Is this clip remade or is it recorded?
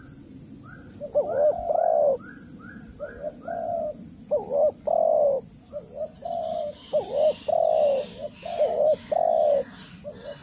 recorded